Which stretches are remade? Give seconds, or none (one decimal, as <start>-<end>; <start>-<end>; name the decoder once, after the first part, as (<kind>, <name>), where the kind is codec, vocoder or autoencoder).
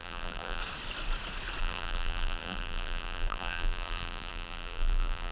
0.0-0.6 (vocoder, BigVGAN v2); 1.6-5.3